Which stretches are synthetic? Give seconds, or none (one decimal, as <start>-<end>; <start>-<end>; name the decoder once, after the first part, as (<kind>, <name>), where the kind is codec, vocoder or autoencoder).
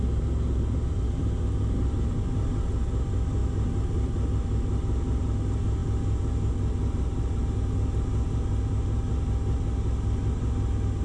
none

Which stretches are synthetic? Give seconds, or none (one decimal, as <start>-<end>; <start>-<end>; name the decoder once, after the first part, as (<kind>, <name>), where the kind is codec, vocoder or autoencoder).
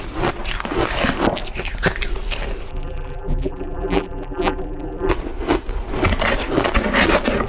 2.7-5.1 (vocoder, BigVGAN v2)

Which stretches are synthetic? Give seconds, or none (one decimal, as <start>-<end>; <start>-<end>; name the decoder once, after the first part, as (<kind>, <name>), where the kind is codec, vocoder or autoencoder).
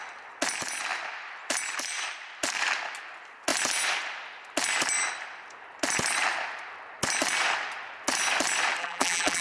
8.8-9.4 (vocoder, BigVGAN v2)